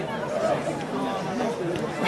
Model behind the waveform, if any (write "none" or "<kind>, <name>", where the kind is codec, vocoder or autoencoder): none